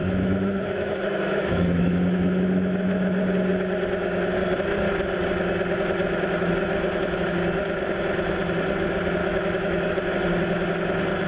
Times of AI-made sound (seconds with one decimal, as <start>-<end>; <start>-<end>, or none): 0.0-3.2; 9.2-9.9